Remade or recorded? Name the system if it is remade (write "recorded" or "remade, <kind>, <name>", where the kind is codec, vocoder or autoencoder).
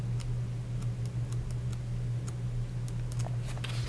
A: recorded